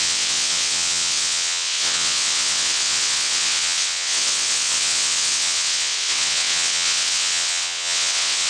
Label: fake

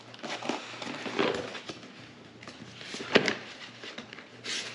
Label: real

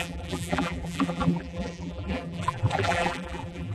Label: fake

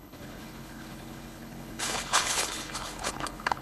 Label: fake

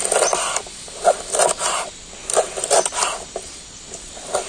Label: real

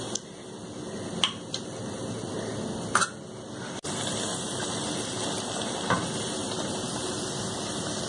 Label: real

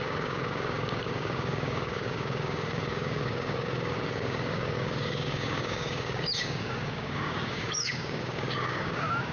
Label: fake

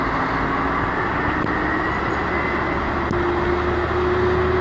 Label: real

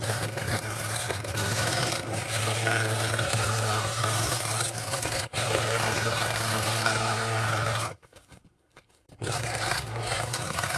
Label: fake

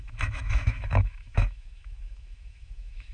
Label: fake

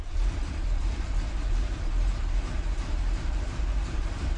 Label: fake